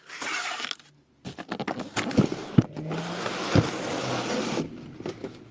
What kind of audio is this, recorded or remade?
recorded